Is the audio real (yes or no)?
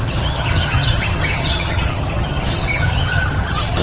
no